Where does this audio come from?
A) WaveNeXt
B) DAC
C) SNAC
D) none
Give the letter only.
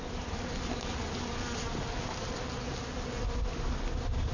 D